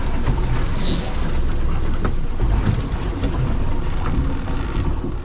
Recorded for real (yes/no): yes